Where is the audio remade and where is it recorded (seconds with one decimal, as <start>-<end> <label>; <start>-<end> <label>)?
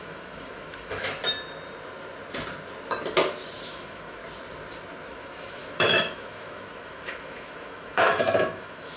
0.0-1.2 remade; 1.2-3.7 recorded; 3.7-4.2 remade; 4.2-5.1 recorded; 5.1-9.0 remade